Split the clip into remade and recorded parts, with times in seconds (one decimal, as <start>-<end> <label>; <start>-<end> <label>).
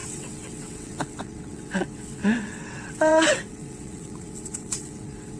0.0-5.4 remade